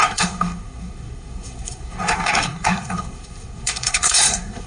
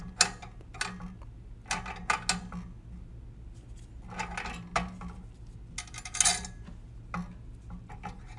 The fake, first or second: first